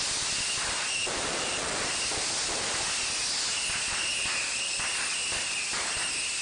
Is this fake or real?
real